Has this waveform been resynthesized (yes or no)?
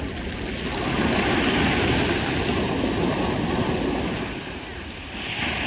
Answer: no